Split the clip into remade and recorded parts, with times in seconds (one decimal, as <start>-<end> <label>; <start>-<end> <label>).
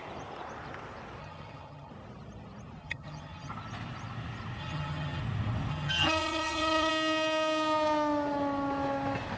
0.0-1.2 recorded; 1.2-1.9 remade; 1.9-2.8 recorded; 2.8-3.5 remade; 3.5-4.6 recorded; 4.6-5.2 remade; 5.2-5.7 recorded; 5.7-6.9 remade; 6.9-9.4 recorded